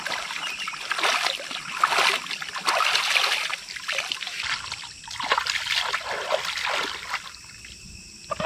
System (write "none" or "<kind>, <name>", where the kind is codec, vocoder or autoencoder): none